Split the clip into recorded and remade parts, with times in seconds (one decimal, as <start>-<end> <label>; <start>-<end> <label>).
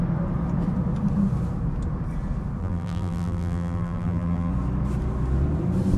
0.0-2.6 recorded; 2.6-4.5 remade; 4.5-6.0 recorded